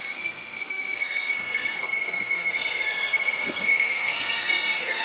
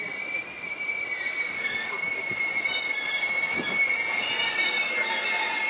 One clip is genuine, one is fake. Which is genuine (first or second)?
second